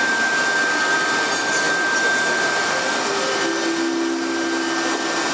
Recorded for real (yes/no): yes